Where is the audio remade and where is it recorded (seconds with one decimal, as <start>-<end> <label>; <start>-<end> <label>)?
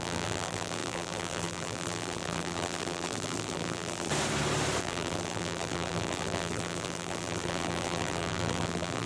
0.0-4.1 remade; 4.1-4.8 recorded; 4.8-9.1 remade